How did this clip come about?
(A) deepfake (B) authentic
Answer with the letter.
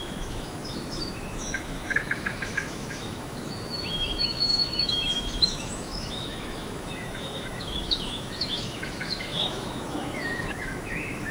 A